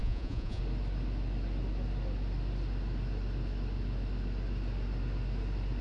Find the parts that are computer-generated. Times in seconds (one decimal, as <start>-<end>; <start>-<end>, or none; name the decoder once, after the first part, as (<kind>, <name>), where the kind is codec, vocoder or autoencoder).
0.0-0.6 (vocoder, Vocos)